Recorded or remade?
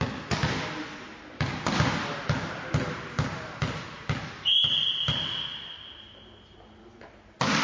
recorded